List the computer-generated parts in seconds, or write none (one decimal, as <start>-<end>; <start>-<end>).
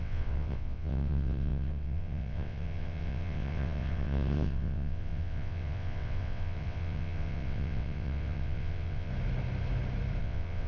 0.0-9.1; 10.2-10.7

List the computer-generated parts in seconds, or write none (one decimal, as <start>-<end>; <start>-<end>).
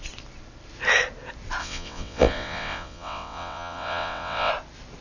1.6-4.5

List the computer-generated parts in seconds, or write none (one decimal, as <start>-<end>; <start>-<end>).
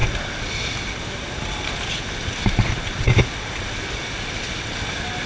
none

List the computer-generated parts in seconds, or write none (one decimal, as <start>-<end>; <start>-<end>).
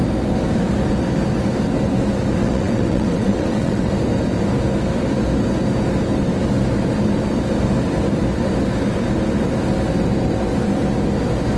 2.4-3.9